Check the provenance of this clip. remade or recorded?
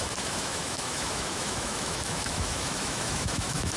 remade